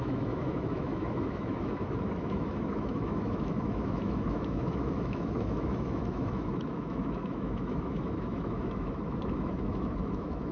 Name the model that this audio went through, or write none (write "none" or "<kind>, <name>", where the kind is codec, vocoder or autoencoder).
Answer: autoencoder, DAC-VAE